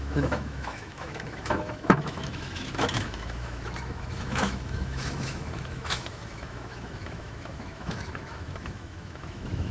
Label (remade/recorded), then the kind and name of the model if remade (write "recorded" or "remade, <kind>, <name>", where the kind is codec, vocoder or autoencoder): remade, autoencoder, DAC-VAE